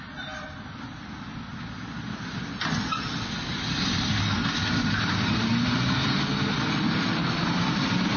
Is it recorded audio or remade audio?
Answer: recorded